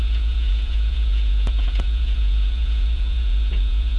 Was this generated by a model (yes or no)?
yes